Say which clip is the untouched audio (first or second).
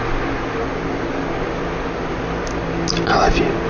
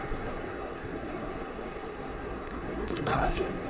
first